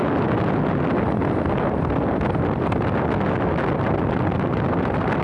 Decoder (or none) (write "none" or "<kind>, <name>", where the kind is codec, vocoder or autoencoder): none